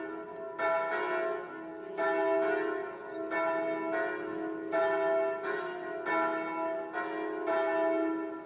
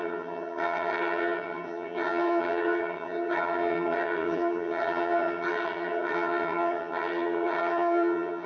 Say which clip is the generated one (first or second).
second